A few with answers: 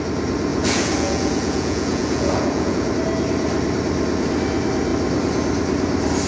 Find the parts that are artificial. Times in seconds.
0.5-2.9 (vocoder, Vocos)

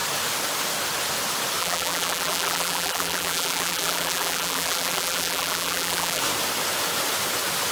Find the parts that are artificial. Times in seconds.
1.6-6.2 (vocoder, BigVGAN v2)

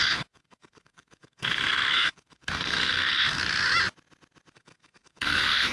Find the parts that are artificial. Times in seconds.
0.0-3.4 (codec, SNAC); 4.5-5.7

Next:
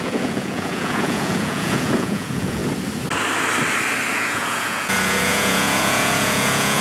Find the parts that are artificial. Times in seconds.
0.0-2.6 (vocoder, Vocos); 4.1-6.8

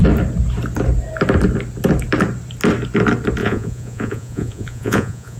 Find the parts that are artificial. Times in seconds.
3.4-5.4 (vocoder, Vocos)